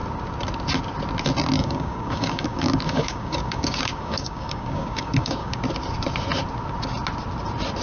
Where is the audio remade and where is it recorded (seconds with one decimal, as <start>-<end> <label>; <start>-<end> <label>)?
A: 0.0-1.6 recorded; 1.6-5.6 remade; 5.6-7.8 recorded